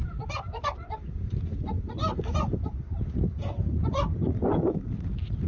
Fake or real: real